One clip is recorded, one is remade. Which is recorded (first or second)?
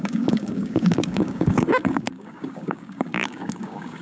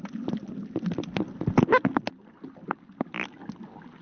second